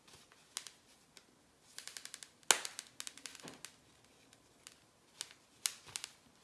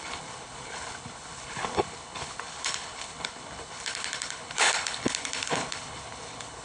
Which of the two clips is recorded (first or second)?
first